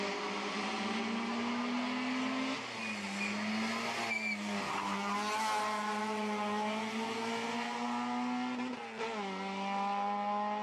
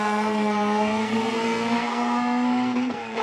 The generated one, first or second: second